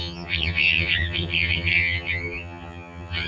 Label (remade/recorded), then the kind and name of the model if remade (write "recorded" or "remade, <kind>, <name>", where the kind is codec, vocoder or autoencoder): remade, vocoder, HiFi-GAN